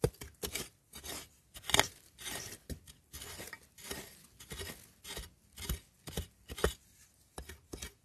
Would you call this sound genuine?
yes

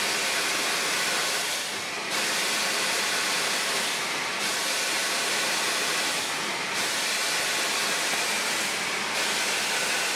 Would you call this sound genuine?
yes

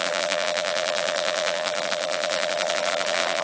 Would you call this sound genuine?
no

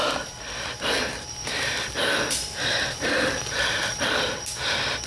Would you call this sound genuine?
yes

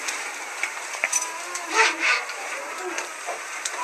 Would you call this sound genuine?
no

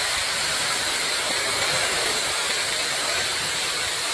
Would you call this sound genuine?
no